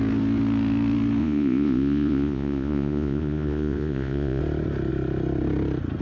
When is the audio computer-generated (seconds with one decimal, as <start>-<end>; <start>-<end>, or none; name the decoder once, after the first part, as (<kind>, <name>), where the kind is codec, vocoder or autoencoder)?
1.2-4.4 (vocoder, Vocos)